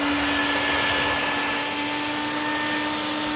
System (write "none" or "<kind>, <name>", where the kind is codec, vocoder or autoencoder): none